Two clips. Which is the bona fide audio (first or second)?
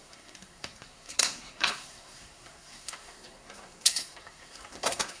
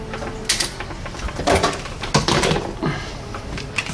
second